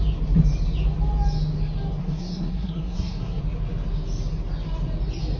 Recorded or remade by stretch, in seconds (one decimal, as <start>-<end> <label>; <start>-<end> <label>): 0.0-2.0 recorded; 2.0-3.4 remade; 3.4-5.4 recorded